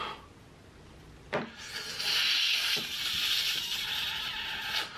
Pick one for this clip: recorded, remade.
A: recorded